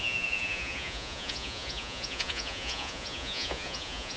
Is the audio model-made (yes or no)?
yes